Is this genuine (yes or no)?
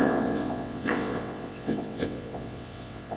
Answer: no